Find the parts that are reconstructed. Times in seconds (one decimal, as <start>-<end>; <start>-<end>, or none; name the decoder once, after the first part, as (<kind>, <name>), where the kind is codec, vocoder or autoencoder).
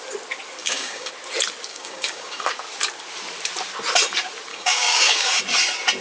0.6-1.1 (codec, DAC); 1.7-2.4; 4.5-5.4